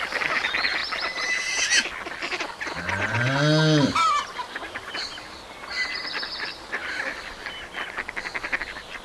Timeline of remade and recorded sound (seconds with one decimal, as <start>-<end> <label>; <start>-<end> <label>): 0.0-9.0 recorded